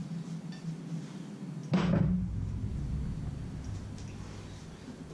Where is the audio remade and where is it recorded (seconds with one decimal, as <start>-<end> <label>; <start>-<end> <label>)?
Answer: 0.0-5.1 recorded